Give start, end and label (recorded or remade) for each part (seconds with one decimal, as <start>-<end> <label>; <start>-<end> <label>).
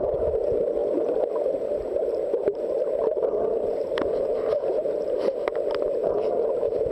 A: 0.0-6.9 recorded